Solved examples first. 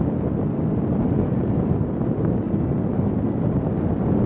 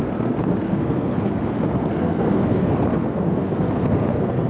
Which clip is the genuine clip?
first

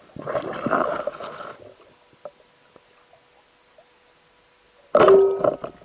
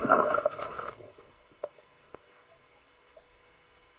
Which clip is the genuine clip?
first